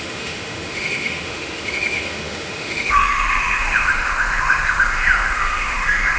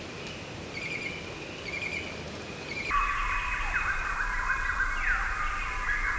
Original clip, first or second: second